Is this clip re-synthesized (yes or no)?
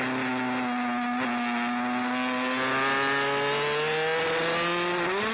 no